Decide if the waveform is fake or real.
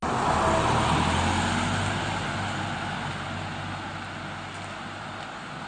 real